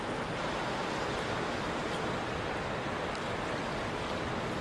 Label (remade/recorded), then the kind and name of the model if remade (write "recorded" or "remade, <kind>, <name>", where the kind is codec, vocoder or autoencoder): recorded